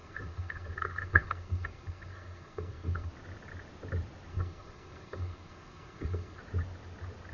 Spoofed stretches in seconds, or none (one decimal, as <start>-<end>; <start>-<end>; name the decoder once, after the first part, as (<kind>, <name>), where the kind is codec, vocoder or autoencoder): 0.0-3.1 (codec, SNAC); 4.3-6.4